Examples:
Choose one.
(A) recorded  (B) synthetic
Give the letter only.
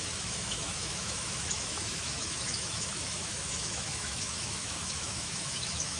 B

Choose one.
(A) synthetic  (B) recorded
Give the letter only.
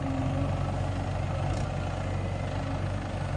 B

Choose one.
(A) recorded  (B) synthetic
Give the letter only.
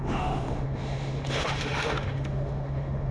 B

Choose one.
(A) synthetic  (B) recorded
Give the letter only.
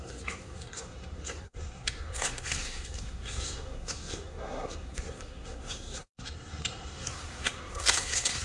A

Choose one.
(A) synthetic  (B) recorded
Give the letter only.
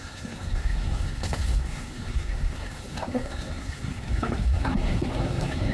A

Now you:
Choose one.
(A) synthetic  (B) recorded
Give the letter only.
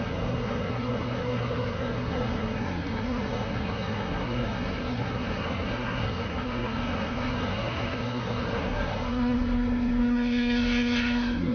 A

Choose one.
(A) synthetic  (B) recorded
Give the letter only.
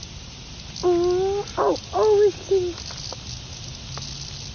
B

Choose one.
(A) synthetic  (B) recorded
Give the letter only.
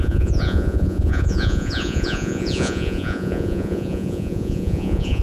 A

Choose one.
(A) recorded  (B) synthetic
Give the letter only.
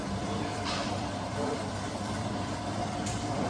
B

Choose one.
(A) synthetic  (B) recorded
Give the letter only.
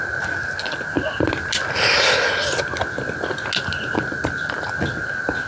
B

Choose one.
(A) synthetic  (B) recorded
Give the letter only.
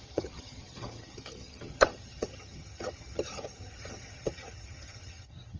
A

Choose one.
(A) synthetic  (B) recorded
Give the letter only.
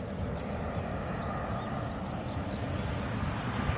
B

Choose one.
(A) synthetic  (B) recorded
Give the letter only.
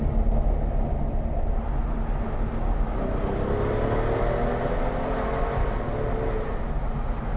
B